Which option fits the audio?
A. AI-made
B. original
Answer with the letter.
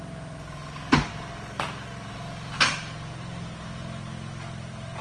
B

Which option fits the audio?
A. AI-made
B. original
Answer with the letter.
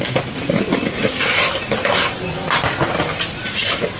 B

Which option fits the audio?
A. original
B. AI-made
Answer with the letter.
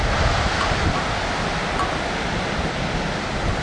A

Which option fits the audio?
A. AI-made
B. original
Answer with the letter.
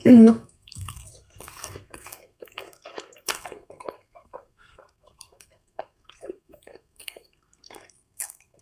A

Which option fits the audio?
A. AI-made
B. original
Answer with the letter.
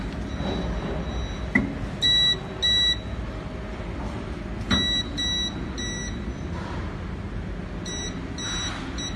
B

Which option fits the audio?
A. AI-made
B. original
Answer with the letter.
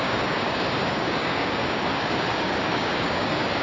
A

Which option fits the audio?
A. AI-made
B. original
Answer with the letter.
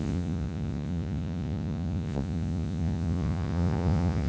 A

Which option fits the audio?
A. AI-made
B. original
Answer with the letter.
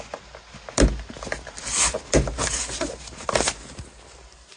B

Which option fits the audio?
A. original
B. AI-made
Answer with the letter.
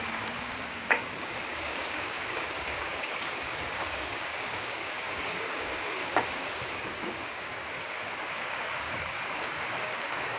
B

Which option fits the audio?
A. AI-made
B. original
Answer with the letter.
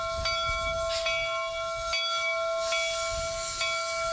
B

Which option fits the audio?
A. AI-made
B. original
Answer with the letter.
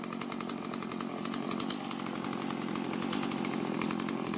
B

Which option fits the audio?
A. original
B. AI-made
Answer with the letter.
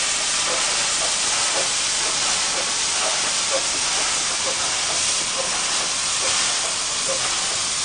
A